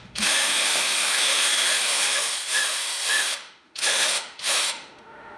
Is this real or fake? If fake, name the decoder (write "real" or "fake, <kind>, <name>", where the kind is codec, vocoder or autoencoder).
fake, autoencoder, DAC-VAE